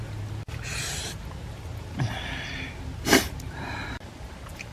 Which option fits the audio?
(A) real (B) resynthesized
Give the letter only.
A